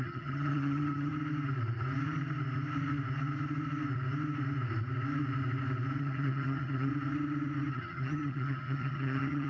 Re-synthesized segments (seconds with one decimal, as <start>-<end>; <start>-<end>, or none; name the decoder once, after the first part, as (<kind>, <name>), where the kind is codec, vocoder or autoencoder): 0.0-1.1 (vocoder, HiFi-GAN); 6.0-6.9; 7.7-9.5